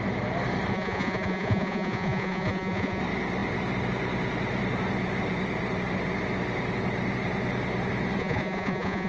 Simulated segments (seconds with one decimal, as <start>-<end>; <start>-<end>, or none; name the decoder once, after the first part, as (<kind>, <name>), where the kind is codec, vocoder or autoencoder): 0.7-3.0 (vocoder, Vocos); 8.2-9.1